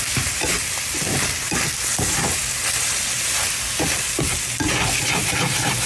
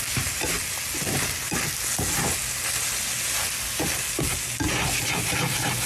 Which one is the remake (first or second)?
first